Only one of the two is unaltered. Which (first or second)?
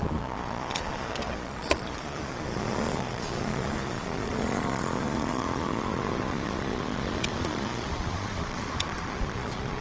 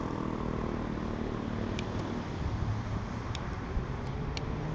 second